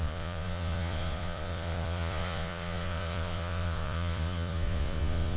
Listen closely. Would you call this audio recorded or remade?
remade